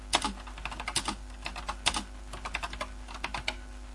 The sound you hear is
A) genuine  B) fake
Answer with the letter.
A